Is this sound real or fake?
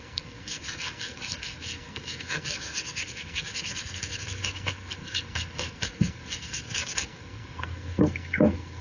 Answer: fake